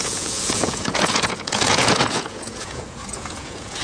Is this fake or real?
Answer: fake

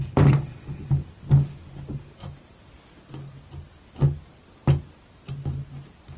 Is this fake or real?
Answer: real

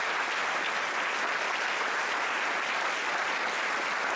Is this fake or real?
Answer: real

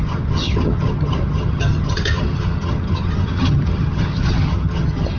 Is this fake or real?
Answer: fake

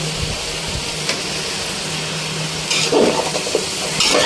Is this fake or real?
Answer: real